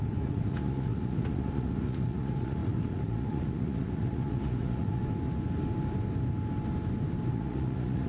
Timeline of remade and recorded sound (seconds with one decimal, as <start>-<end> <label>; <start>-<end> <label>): 0.0-5.0 remade; 5.0-7.3 recorded; 7.3-8.1 remade